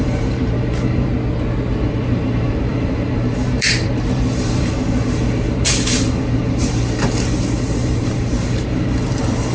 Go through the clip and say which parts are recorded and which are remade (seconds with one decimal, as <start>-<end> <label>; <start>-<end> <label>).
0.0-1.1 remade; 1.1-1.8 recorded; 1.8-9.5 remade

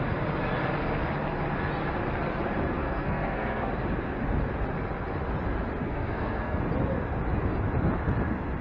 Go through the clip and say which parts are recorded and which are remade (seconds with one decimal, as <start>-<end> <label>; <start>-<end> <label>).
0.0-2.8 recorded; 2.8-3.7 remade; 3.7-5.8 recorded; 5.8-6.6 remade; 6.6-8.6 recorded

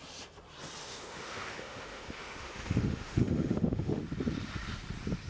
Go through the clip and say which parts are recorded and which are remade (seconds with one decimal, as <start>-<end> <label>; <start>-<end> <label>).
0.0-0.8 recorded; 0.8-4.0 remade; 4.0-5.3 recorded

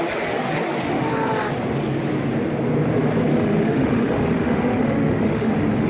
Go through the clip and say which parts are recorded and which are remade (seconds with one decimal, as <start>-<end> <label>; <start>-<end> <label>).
0.0-3.3 recorded; 3.3-5.5 remade; 5.5-5.9 recorded

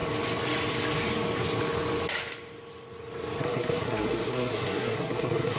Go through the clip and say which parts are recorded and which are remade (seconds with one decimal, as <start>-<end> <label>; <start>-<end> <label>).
0.0-3.4 recorded; 3.4-5.6 remade

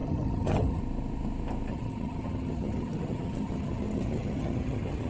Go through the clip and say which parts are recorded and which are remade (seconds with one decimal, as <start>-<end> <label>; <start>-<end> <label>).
0.0-0.8 remade; 0.8-1.7 recorded; 1.7-5.1 remade

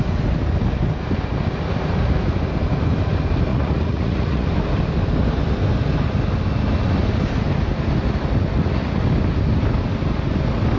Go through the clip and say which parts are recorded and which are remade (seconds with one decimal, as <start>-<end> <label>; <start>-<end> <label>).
0.0-3.5 recorded; 3.5-4.5 remade; 4.5-10.8 recorded